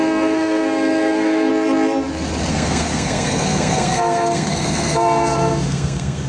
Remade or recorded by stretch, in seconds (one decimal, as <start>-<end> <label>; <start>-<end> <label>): 0.0-1.5 remade; 1.5-2.5 recorded; 2.5-6.3 remade